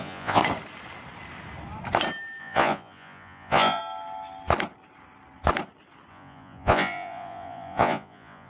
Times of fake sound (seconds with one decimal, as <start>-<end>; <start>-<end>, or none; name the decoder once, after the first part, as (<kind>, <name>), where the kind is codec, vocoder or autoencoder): 0.0-0.4 (vocoder, Vocos); 2.4-3.8; 6.1-8.5